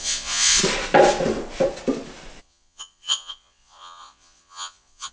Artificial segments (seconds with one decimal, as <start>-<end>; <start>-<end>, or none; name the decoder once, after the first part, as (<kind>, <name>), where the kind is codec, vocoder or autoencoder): 0.0-0.6 (vocoder, Vocos); 2.4-5.1